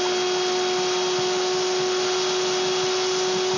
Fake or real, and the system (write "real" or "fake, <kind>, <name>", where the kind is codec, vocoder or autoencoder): real